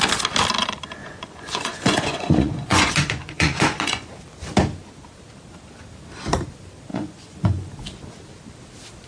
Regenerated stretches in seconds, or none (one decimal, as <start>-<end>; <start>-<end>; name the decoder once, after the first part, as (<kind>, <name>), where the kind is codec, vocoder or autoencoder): 1.0-4.1 (vocoder, Vocos); 6.9-7.7